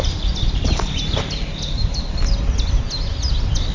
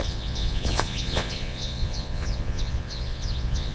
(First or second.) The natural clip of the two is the first